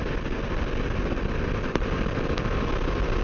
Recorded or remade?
recorded